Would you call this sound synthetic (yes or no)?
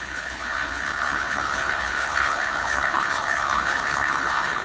yes